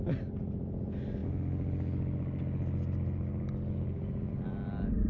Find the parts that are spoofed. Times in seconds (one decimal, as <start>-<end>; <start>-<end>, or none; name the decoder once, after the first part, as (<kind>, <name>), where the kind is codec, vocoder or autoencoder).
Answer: none